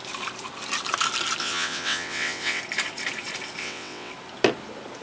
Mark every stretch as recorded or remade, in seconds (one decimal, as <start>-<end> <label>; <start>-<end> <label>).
0.0-1.4 recorded; 1.4-2.6 remade; 2.6-3.6 recorded; 3.6-4.1 remade; 4.1-5.0 recorded